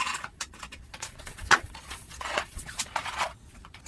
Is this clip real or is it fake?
fake